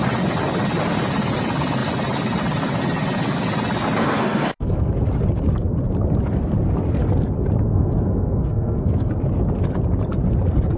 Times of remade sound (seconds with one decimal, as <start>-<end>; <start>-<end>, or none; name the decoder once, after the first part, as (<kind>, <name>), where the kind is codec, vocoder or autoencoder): 4.0-4.9 (codec, SNAC); 7.7-9.1